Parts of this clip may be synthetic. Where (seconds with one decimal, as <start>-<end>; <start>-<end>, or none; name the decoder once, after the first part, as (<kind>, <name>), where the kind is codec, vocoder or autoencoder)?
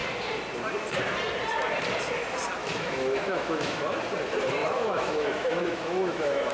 2.6-4.0 (autoencoder, DAC-VAE); 4.6-6.5